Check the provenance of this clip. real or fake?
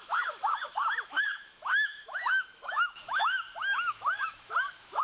fake